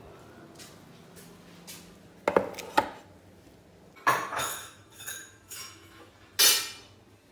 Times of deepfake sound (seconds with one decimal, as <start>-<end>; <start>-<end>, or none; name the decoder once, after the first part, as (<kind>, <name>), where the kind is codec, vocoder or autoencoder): 4.3-6.1 (autoencoder, DAC-VAE)